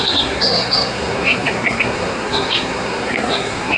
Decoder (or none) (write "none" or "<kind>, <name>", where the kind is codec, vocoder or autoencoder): codec, SNAC